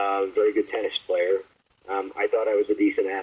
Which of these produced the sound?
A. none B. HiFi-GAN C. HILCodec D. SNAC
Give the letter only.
A